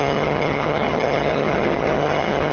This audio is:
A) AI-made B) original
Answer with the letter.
A